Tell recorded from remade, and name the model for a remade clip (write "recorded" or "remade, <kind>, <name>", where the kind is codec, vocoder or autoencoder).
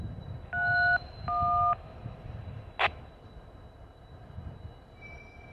recorded